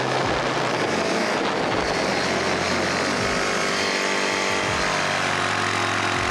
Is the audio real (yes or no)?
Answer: yes